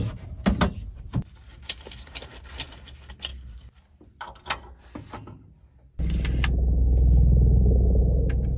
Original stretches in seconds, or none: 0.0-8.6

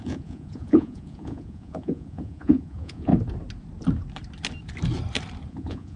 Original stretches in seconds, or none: 3.1-5.5